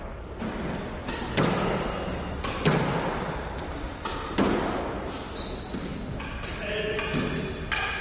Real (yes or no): yes